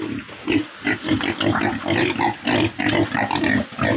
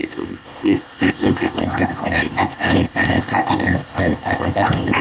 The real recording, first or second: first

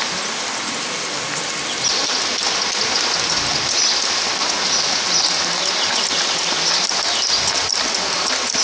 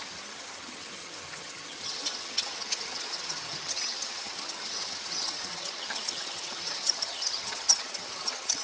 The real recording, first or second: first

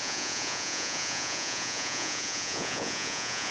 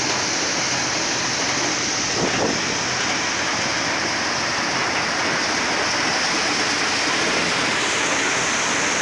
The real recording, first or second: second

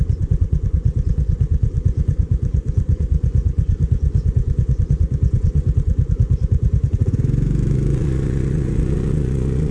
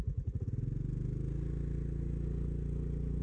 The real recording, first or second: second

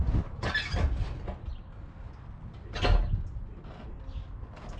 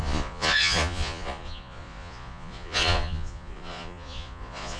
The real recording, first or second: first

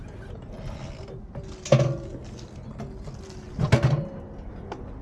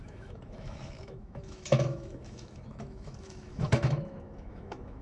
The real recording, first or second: first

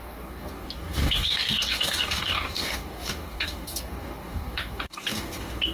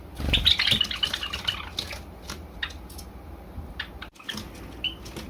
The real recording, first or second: second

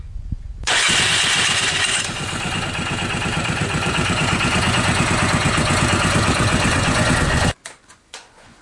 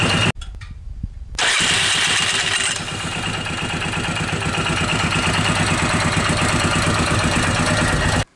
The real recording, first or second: second